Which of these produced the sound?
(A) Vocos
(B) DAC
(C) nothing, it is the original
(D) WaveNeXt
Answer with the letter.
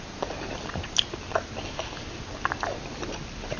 C